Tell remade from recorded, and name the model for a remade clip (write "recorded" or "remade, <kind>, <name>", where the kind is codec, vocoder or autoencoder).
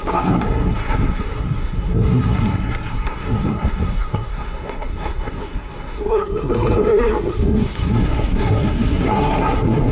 remade, codec, SNAC